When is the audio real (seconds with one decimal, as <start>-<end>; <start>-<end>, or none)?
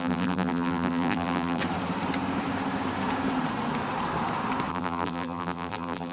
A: 1.6-4.7